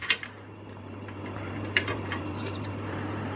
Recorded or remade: remade